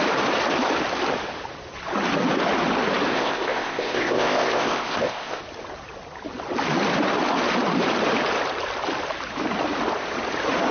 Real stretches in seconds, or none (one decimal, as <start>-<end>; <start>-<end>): 0.0-3.1; 5.4-10.7